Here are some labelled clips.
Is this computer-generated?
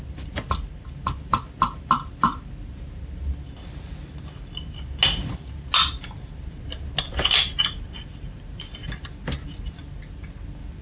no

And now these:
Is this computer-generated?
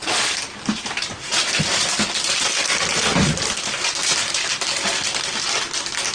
no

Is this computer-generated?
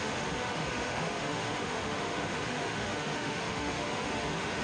yes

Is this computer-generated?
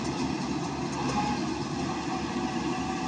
no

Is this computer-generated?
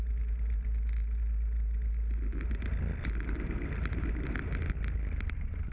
no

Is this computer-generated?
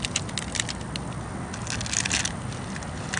no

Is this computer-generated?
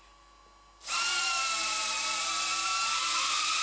no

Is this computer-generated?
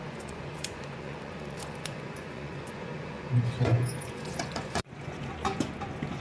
yes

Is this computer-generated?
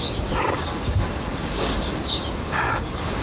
yes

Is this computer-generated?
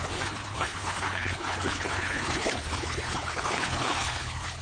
yes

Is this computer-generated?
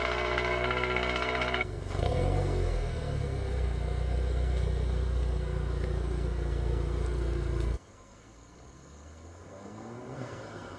yes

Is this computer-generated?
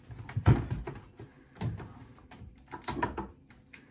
no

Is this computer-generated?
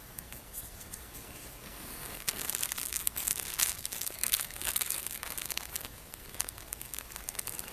yes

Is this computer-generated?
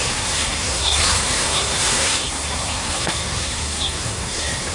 yes